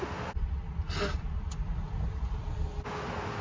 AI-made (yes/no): no